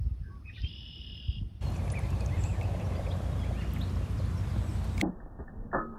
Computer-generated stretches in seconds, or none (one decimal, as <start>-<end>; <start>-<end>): 0.0-2.5